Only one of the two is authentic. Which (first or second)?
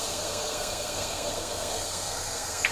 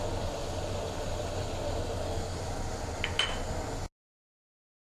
second